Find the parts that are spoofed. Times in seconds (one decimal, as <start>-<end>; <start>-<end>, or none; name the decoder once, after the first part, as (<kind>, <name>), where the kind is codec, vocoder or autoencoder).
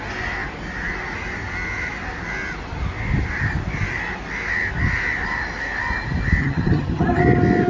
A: 6.4-7.2 (vocoder, HiFi-GAN)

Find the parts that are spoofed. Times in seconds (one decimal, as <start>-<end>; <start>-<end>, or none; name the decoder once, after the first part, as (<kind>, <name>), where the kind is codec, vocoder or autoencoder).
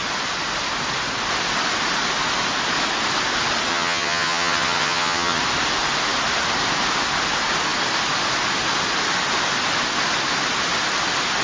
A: 3.7-5.4 (vocoder, HiFi-GAN)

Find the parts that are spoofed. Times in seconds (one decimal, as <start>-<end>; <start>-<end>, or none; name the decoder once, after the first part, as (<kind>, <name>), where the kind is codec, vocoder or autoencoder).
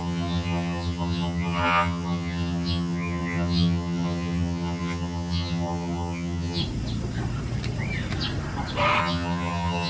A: 0.0-6.6 (vocoder, HiFi-GAN); 9.0-9.9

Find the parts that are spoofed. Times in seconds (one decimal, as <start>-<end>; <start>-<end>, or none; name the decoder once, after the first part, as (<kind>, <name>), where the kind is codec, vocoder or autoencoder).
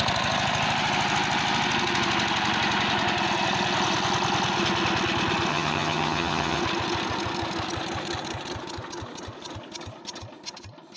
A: 5.5-6.6 (vocoder, HiFi-GAN)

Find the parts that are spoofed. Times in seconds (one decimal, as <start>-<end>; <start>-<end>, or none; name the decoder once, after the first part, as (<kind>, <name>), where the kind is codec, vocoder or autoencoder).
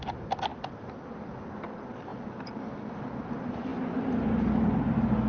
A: none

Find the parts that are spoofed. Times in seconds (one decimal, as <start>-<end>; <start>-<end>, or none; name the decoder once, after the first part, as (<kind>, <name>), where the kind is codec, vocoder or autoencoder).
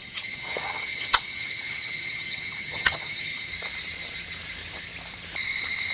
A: 0.0-3.5 (vocoder, HiFi-GAN)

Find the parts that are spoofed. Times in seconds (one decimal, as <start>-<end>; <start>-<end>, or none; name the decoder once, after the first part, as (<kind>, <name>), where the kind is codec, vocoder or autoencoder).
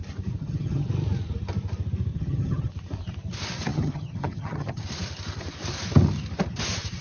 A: 0.4-0.9 (vocoder, HiFi-GAN); 2.1-2.7; 3.7-4.8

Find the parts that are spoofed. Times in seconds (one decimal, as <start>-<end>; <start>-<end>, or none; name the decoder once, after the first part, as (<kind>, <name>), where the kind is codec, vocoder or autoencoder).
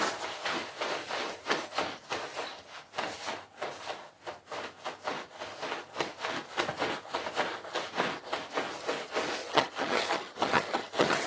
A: 9.4-11.3 (vocoder, HiFi-GAN)